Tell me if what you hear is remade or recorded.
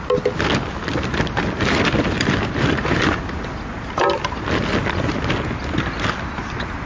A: recorded